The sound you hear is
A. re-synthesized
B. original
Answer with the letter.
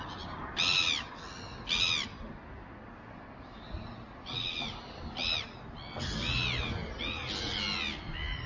B